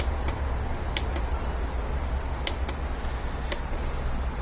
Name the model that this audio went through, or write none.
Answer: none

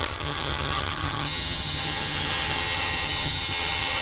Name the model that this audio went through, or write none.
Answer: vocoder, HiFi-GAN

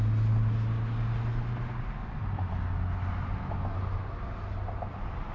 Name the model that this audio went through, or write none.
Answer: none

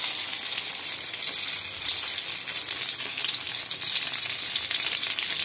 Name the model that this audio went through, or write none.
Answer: none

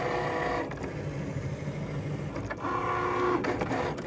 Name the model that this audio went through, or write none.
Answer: none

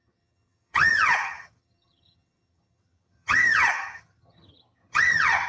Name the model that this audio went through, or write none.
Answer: vocoder, HiFi-GAN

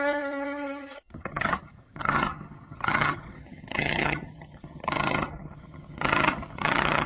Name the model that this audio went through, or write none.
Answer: vocoder, HiFi-GAN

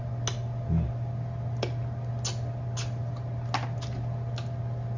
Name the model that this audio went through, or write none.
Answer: none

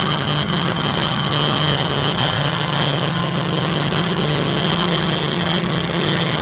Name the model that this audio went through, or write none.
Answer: vocoder, HiFi-GAN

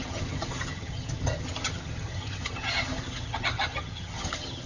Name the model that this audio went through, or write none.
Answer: vocoder, HiFi-GAN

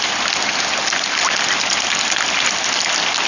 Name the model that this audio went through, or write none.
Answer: none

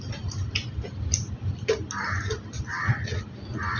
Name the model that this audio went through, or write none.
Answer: none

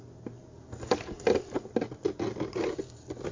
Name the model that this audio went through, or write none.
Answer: none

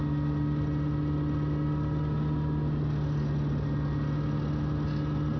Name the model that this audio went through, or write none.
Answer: none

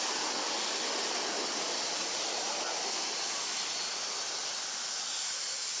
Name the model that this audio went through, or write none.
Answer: none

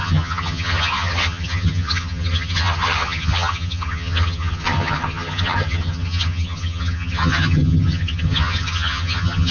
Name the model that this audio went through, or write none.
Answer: vocoder, HiFi-GAN